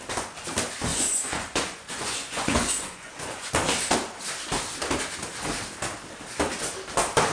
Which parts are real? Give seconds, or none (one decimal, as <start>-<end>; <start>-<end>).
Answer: 0.0-0.9; 3.5-7.3